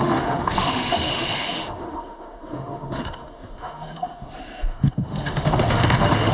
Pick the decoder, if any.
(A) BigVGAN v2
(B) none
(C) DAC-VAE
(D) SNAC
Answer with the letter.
C